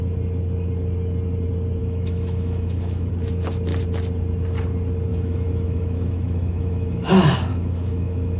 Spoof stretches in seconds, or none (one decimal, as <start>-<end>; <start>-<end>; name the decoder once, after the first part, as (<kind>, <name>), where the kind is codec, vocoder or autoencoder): 1.8-3.1 (autoencoder, DAC-VAE); 5.1-7.1; 7.5-8.4